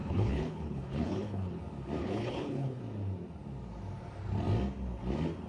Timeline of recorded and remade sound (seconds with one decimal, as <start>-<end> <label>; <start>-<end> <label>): 0.0-1.6 remade; 1.6-2.0 recorded; 2.0-2.8 remade; 2.8-5.5 recorded